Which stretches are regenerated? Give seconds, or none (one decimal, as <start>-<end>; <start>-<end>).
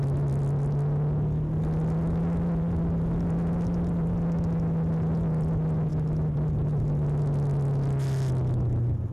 none